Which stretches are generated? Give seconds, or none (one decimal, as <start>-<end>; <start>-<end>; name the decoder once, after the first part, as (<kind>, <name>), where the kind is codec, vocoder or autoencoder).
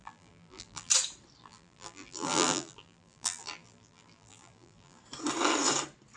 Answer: 0.0-0.9 (vocoder, BigVGAN v2); 1.4-5.0